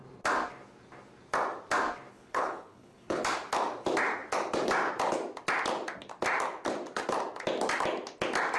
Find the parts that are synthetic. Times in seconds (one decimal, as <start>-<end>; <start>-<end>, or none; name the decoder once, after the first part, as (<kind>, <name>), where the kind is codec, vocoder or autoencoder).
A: 2.1-3.2 (codec, HILCodec)